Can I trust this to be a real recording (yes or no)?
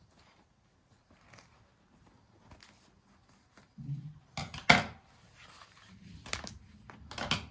yes